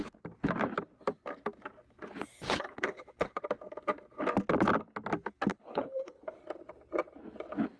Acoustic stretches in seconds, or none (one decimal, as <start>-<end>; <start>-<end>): 0.0-2.3; 3.4-5.5; 6.4-7.8